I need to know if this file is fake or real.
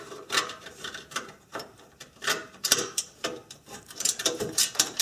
fake